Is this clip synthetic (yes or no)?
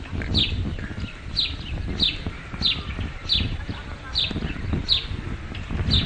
no